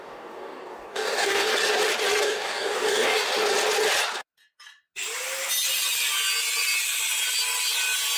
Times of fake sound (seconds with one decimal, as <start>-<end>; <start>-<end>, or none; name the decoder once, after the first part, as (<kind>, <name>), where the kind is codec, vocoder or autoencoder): 0.0-1.5 (codec, DAC); 2.2-3.3